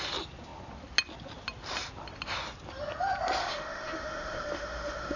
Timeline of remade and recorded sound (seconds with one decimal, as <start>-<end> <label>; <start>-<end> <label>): 0.0-3.4 recorded; 3.4-5.2 remade